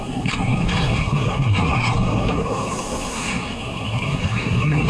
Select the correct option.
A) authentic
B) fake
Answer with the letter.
B